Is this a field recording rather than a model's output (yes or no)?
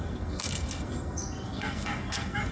no